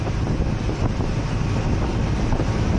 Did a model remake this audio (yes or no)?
no